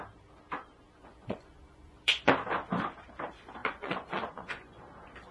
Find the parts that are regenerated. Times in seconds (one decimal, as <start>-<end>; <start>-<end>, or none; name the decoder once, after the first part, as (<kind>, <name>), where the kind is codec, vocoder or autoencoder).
1.0-2.3 (vocoder, Vocos); 3.6-4.8